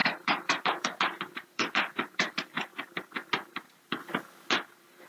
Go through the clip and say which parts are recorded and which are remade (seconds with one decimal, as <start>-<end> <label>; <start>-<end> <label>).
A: 0.0-2.7 remade; 2.7-3.5 recorded; 3.5-4.0 remade; 4.0-4.5 recorded; 4.5-5.1 remade